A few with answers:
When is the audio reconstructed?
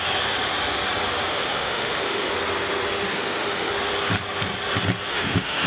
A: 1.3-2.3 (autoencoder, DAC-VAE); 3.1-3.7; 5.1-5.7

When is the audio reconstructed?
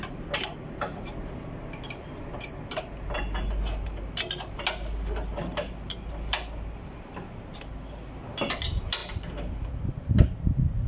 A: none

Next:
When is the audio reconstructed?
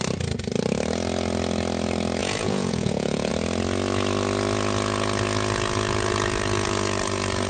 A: 2.2-3.3 (vocoder, Vocos)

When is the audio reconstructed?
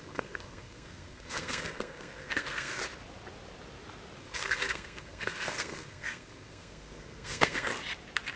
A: 0.0-2.8 (codec, SNAC); 4.2-7.7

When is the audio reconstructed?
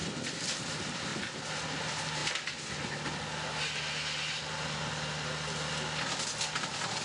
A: none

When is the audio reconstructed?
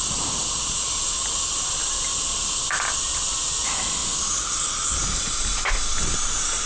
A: none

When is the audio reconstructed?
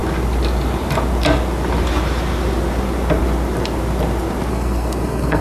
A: 4.5-5.4 (codec, SNAC)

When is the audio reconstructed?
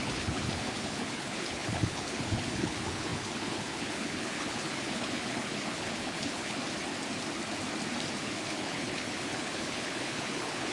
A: 0.0-6.6 (codec, HILCodec); 8.2-10.7